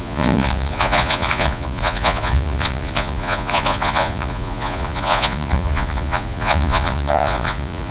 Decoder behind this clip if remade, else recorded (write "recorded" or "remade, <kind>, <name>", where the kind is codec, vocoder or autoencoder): remade, vocoder, Vocos